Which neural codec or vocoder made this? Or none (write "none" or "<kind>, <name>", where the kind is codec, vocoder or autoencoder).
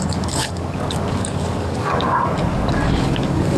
codec, DAC